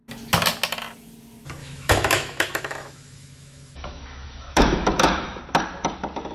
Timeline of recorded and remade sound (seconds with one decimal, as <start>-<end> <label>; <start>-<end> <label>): 0.0-1.6 recorded; 1.6-5.4 remade; 5.4-6.3 recorded